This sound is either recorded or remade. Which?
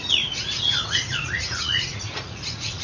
remade